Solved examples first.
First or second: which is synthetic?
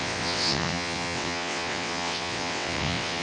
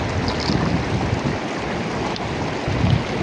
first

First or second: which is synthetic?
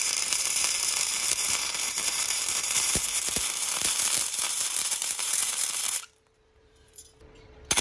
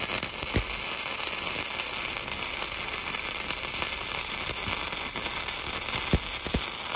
first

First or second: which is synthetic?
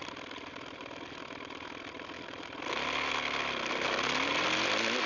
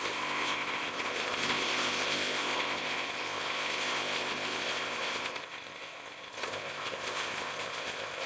second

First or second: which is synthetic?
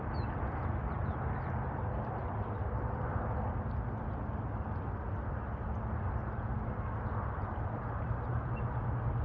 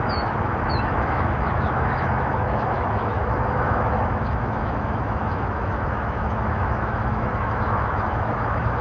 second